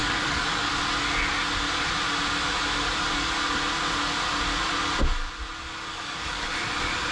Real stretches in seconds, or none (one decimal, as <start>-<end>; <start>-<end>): 0.7-5.9; 6.5-7.1

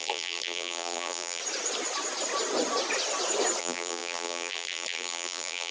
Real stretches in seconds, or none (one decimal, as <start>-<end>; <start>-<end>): 1.4-3.6

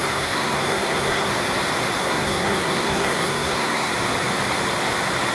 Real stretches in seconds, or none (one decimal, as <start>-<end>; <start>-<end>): 1.3-2.0; 3.9-5.3

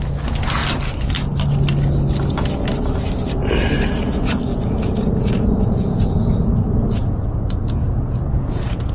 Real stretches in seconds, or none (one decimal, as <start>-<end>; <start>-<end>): 0.0-4.5

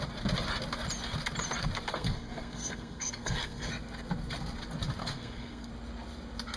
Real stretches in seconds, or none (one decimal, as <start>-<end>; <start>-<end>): 0.0-1.9; 3.7-5.0; 5.7-6.6

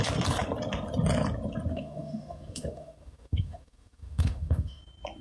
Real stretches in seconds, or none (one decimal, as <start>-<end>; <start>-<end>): 0.0-1.7; 4.8-5.2

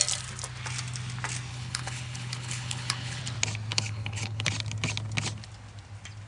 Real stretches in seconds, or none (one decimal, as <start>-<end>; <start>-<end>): 0.0-1.5; 3.2-3.7; 4.5-6.3